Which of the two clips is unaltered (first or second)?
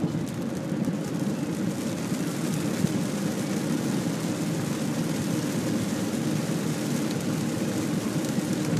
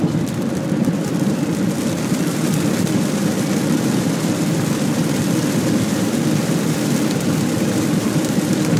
first